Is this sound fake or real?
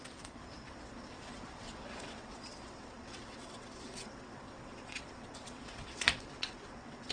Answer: fake